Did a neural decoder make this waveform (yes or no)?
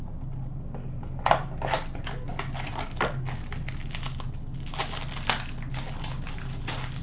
no